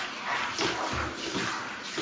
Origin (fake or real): real